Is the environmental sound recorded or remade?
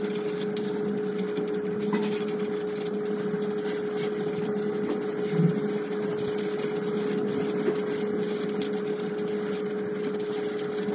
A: recorded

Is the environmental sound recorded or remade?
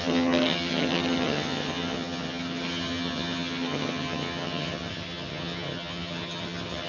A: remade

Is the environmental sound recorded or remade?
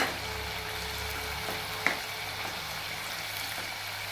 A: recorded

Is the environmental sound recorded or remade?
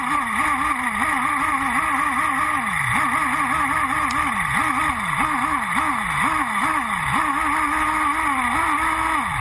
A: recorded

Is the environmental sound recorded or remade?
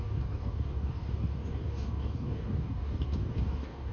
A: remade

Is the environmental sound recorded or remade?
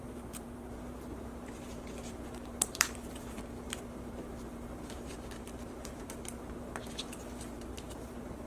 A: remade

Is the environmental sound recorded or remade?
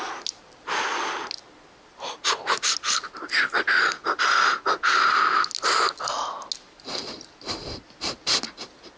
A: recorded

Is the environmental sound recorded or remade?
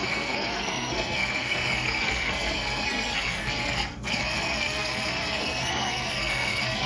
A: remade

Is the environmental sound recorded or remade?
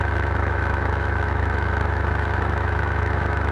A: remade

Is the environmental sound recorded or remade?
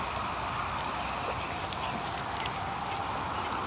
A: recorded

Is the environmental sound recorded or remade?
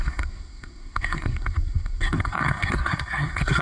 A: remade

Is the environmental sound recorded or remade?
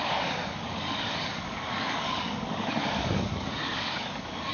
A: remade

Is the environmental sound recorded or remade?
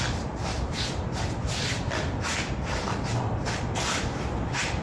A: remade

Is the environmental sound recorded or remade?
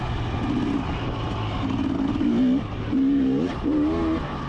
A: recorded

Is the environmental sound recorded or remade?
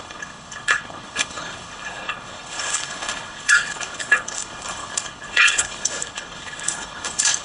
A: remade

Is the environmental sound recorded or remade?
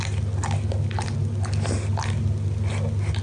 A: recorded